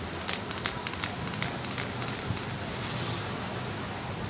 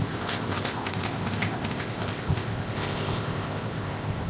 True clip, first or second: first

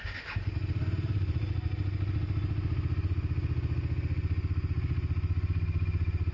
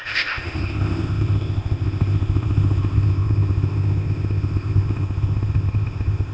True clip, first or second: first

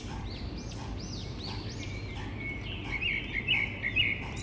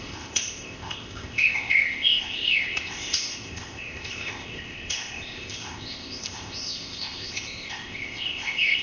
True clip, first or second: first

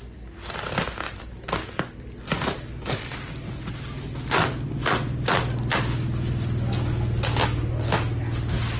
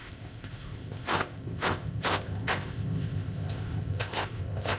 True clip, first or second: first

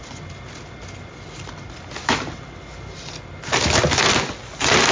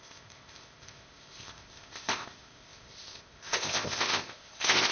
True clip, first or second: first